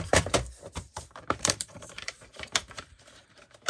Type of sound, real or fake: fake